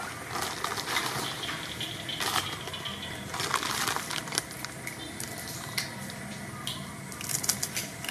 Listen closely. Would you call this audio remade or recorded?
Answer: recorded